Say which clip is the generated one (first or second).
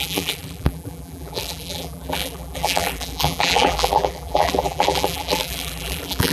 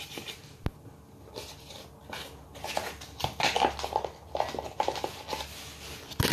first